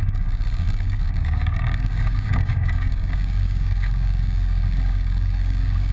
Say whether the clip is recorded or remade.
remade